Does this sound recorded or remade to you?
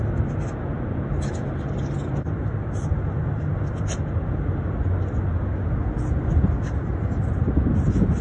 recorded